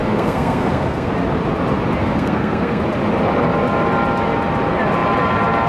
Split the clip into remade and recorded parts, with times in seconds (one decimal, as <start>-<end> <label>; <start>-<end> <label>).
0.0-1.1 remade; 1.1-2.0 recorded; 2.0-2.8 remade; 2.8-5.7 recorded